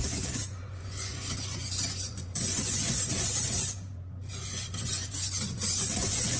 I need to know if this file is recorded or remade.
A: remade